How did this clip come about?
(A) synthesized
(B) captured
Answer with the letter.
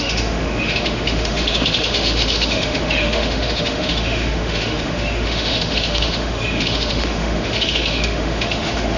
A